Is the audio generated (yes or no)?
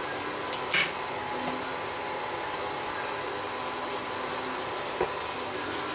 no